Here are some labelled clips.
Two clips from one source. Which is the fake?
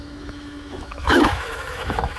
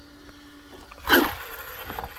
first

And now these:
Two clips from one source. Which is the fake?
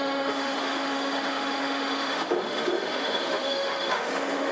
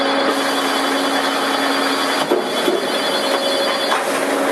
first